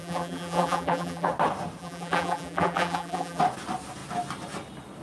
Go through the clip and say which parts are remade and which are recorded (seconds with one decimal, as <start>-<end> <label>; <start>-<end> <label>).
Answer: 0.0-1.3 remade; 1.3-1.8 recorded; 1.8-3.4 remade; 3.4-5.0 recorded